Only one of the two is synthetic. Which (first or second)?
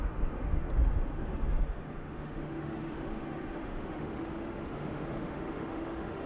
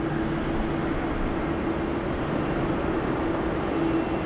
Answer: first